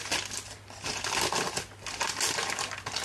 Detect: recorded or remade recorded